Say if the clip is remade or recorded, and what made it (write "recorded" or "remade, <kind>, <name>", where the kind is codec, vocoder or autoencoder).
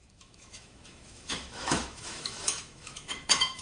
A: remade, autoencoder, DAC-VAE